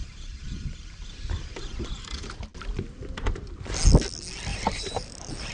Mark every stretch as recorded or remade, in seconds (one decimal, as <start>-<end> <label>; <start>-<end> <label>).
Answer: 0.0-1.2 remade; 1.2-4.5 recorded; 4.5-5.5 remade